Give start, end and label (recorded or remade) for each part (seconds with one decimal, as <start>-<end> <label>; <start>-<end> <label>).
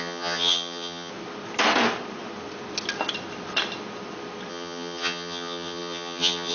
0.0-1.1 remade; 1.1-4.5 recorded; 4.5-6.5 remade